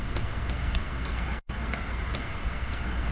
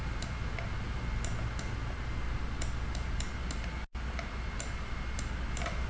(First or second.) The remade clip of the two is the first